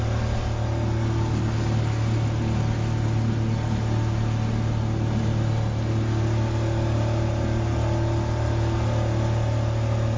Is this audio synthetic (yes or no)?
no